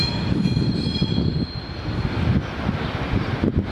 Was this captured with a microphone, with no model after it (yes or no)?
yes